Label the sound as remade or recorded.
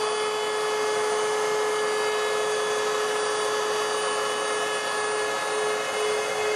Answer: recorded